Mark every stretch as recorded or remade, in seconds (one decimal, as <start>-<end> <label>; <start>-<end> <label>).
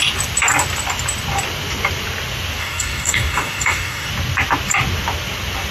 0.0-2.6 recorded; 2.6-4.1 remade; 4.1-5.7 recorded